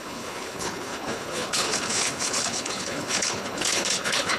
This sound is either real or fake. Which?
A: fake